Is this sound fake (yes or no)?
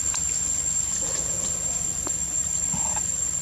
no